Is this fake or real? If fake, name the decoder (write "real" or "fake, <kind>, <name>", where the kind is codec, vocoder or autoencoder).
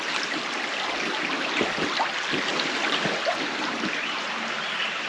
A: real